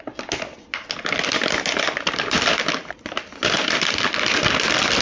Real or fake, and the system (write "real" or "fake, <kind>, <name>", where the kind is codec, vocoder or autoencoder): real